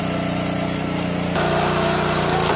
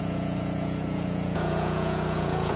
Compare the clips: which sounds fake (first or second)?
second